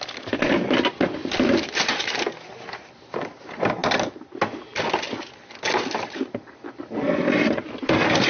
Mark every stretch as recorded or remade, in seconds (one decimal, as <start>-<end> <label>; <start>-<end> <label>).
0.0-8.3 recorded